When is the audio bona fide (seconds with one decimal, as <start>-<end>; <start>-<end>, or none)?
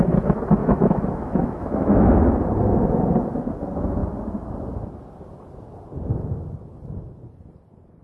0.0-0.6; 2.3-8.0